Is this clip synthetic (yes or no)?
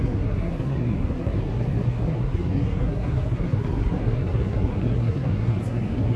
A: yes